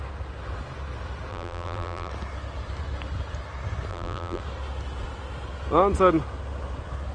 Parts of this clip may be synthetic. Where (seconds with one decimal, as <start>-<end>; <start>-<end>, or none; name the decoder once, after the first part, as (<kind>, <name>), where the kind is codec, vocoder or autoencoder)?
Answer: 1.3-2.1 (vocoder, BigVGAN v2); 3.9-4.4